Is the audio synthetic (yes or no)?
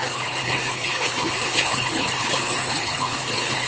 yes